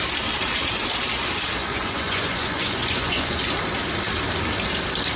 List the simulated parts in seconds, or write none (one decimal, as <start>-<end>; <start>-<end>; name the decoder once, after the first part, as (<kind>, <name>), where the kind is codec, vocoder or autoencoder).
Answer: 1.6-3.4 (vocoder, Vocos)